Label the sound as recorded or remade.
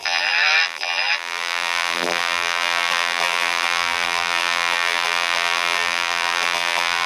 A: remade